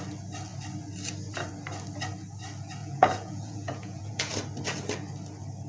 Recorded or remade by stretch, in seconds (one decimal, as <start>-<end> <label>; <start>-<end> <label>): 0.0-2.8 recorded; 2.8-4.3 remade; 4.3-5.7 recorded